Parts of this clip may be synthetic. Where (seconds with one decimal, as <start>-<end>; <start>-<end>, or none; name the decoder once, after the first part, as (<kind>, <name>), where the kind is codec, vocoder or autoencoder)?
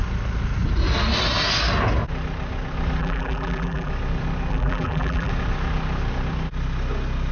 3.0-3.9 (vocoder, BigVGAN v2); 4.5-5.3